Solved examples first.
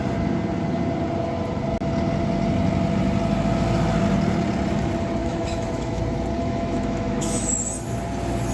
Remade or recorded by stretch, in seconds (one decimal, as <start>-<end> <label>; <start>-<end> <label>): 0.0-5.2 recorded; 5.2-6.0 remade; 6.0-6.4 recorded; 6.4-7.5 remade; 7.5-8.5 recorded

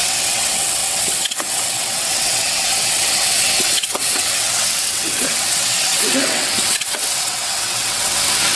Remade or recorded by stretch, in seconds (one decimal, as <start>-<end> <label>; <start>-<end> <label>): 0.0-8.6 remade

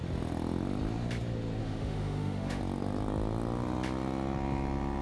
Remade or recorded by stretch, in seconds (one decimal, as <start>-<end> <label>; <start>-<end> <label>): 0.0-1.6 recorded; 1.6-2.6 remade; 2.6-5.0 recorded

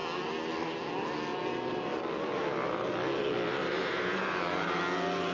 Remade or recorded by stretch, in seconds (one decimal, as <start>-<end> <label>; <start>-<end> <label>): 0.0-3.6 recorded; 3.6-4.8 remade; 4.8-5.3 recorded

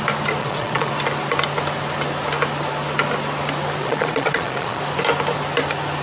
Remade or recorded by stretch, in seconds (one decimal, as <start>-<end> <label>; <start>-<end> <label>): 0.0-0.4 recorded; 0.4-0.9 remade; 0.9-3.8 recorded; 3.8-4.8 remade; 4.8-6.0 recorded

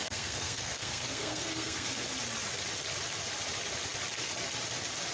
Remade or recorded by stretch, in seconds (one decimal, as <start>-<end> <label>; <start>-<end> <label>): 0.0-1.9 remade; 1.9-5.1 recorded

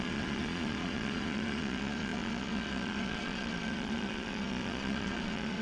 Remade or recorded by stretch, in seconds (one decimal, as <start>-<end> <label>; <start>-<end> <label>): 0.0-5.6 remade